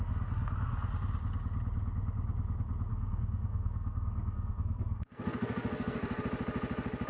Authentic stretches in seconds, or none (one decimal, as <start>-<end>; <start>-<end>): 0.0-2.9; 6.2-7.1